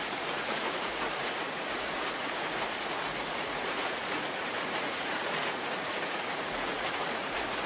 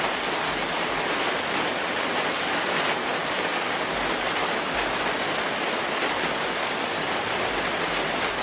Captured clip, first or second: second